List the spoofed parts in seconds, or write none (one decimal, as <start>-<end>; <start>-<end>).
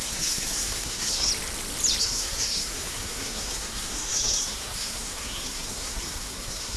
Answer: 0.0-1.3; 2.0-6.8